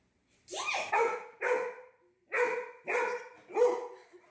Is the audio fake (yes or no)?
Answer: no